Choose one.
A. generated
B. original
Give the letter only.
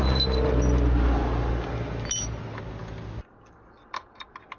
B